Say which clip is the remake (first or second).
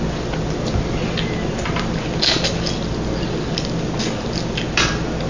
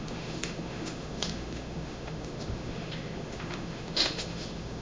second